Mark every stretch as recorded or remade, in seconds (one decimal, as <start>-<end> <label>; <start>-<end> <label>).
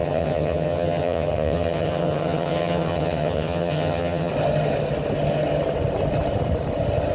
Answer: 0.0-4.3 remade; 4.3-7.1 recorded